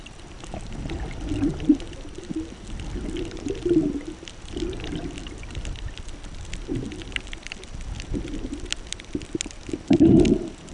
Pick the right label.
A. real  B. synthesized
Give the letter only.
A